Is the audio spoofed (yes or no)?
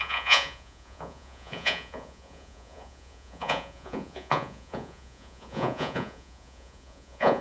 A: yes